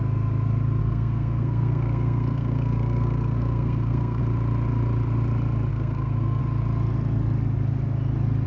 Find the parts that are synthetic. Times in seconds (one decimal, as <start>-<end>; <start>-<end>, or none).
0.8-4.2; 5.7-6.4